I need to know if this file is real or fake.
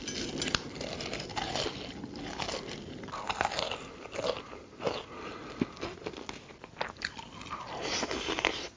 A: real